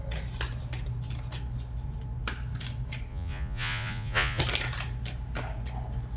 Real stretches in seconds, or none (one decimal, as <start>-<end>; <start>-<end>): 0.0-3.1; 4.4-6.2